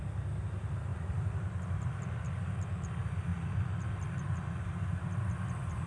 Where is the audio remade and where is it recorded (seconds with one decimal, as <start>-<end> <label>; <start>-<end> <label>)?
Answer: 0.0-5.9 recorded